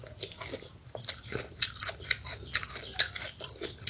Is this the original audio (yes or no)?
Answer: yes